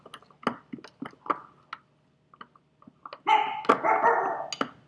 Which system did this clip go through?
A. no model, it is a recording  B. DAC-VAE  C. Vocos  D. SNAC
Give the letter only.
A